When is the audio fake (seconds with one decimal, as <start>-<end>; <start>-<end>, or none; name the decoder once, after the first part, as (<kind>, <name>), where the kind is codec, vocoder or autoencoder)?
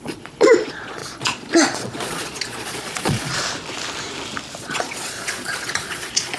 0.0-3.3 (vocoder, Vocos); 4.6-6.4